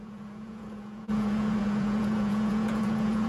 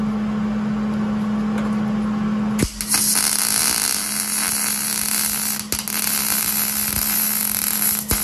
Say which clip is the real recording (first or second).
second